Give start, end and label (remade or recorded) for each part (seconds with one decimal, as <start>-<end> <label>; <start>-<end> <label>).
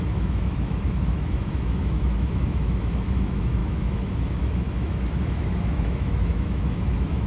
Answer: 0.0-7.3 remade